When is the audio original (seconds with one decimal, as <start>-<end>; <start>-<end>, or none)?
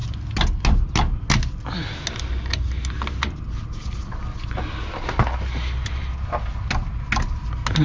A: 0.0-7.8